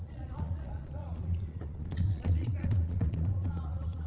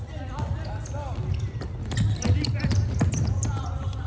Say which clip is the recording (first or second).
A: second